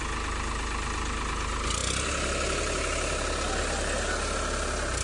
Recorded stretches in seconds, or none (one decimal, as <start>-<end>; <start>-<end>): 0.0-5.0